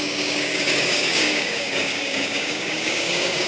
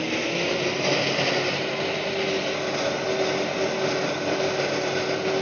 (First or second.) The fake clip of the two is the first